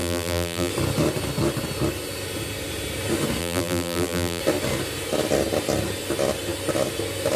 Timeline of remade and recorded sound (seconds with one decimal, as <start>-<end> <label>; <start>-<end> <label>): 0.0-0.7 remade; 0.7-3.4 recorded; 3.4-4.4 remade; 4.4-7.4 recorded